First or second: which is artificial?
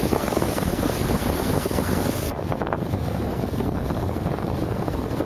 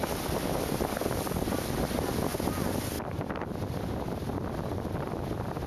first